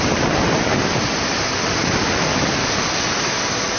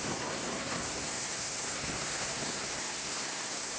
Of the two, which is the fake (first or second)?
second